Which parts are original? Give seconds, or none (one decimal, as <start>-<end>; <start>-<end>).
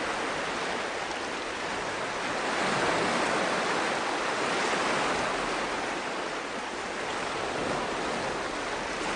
0.0-9.2